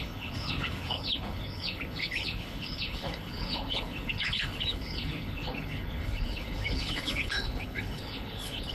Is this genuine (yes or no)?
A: no